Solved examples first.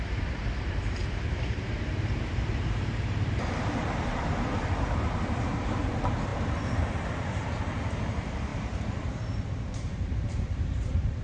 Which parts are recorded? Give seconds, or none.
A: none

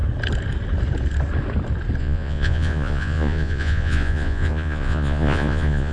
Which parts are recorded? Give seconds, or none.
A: 0.0-2.0

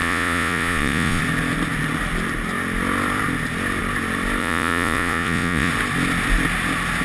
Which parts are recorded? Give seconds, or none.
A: 1.2-4.4; 5.7-7.0

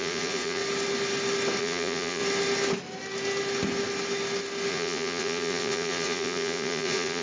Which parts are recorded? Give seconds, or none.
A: 0.6-1.6; 2.2-4.7

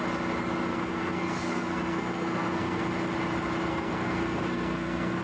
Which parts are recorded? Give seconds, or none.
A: 0.0-0.7; 2.9-3.7

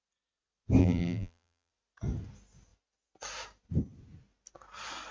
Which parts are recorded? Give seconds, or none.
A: 0.0-0.8; 1.7-5.1

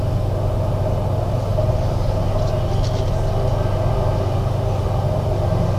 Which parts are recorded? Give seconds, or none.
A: 0.0-5.8